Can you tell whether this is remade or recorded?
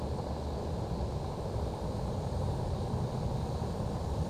recorded